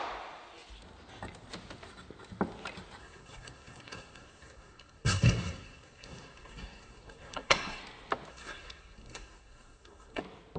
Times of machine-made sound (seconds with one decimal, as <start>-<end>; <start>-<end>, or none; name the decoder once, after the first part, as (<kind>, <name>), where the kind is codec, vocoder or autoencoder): 3.0-7.8 (codec, SNAC); 8.3-10.2